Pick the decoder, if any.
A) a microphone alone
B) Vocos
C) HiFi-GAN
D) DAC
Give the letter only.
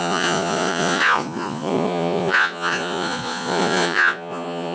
B